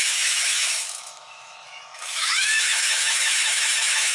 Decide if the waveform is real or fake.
fake